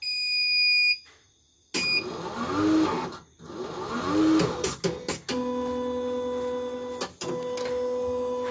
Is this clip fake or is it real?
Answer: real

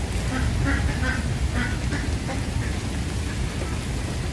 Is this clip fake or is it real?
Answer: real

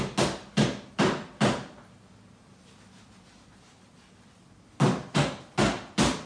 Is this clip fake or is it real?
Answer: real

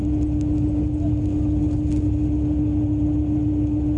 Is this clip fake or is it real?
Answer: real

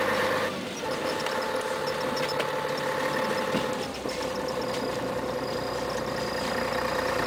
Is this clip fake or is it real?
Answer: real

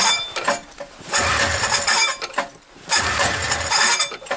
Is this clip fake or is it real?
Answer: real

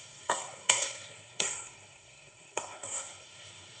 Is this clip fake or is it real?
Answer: fake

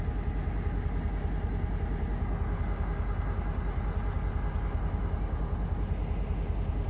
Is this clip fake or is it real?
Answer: real